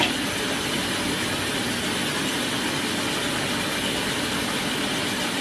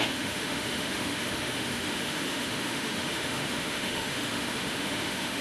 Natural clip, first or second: first